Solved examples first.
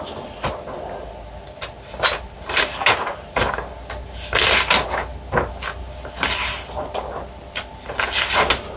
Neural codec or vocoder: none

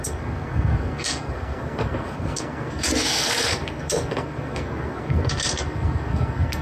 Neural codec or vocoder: codec, SNAC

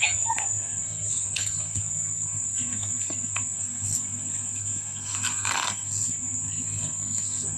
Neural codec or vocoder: codec, SNAC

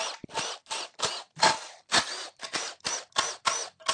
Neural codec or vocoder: none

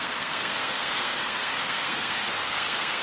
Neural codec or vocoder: codec, SNAC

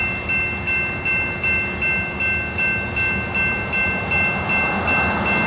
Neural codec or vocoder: none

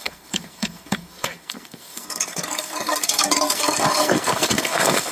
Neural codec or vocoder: codec, SNAC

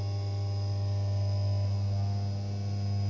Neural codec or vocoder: none